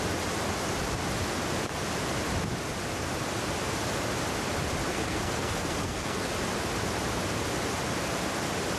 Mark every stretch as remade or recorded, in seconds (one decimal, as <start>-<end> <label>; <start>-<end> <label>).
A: 0.0-4.9 recorded; 4.9-6.3 remade; 6.3-8.8 recorded